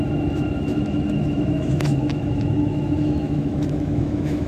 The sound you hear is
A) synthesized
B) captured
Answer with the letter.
A